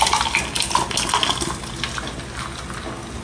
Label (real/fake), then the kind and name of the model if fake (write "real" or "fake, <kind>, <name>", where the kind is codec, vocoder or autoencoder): real